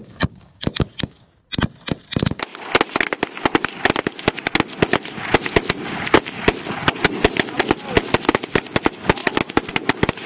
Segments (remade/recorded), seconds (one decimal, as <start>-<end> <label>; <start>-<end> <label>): 0.0-1.4 remade; 1.4-10.3 recorded